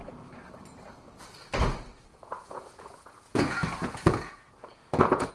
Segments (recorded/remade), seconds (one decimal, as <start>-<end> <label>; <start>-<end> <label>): 0.0-2.1 recorded; 2.1-5.3 remade